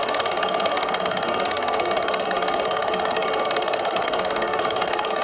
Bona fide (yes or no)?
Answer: no